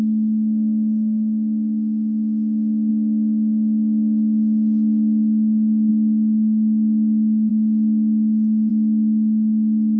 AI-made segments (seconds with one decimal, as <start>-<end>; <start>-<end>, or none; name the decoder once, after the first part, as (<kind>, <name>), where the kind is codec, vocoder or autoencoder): none